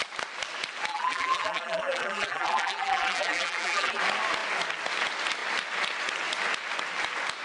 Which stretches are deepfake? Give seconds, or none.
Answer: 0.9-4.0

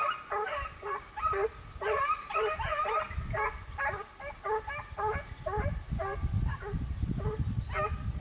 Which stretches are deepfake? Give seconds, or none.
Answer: none

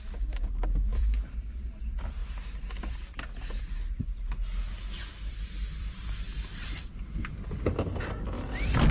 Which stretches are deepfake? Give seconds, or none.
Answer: 0.9-1.8; 5.1-6.9

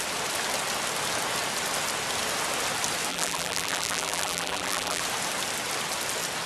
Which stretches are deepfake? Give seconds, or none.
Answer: 3.1-5.0

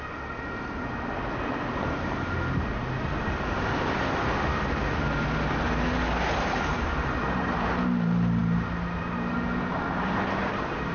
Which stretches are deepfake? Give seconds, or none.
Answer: none

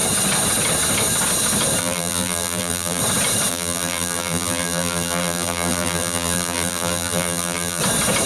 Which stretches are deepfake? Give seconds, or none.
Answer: 1.8-3.0; 3.5-7.8

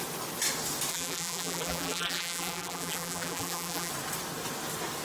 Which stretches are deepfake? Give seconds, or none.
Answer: 0.9-3.9

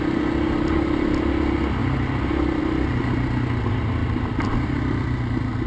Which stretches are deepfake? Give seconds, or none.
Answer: 4.0-5.2